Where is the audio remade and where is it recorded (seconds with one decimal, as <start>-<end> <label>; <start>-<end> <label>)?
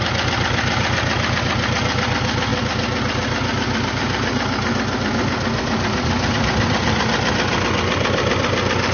0.0-8.9 recorded